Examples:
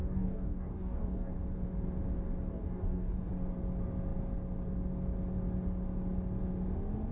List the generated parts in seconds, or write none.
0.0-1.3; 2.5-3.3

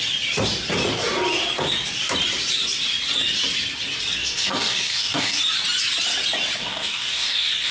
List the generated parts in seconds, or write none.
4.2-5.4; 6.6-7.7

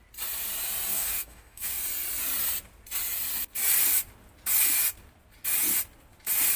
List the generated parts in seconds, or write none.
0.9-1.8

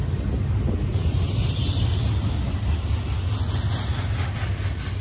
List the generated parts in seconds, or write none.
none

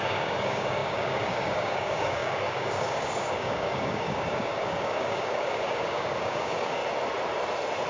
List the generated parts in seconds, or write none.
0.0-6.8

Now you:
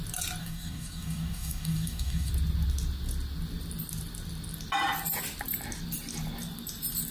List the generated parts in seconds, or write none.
0.4-2.3

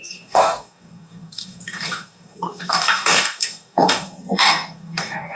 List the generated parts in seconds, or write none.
0.0-5.3